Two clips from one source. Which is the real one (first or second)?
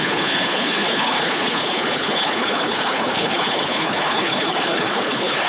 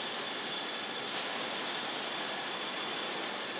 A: second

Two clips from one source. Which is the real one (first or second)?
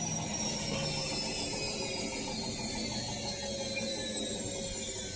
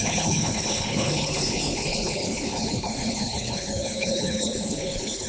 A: first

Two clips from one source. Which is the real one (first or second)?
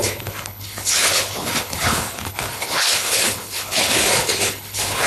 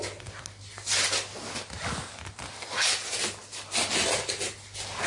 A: second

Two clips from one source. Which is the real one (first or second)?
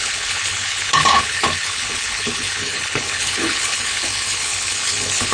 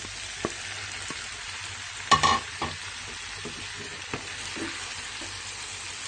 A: second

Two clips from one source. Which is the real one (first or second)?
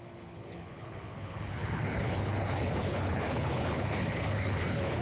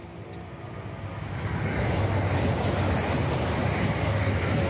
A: second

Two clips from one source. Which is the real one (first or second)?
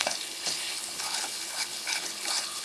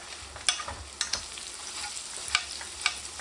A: second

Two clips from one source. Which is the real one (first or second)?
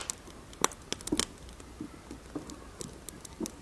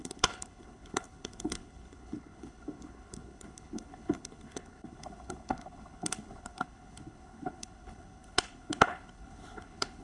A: first